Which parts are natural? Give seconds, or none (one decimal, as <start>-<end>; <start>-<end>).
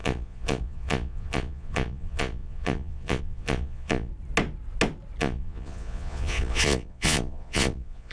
4.1-5.2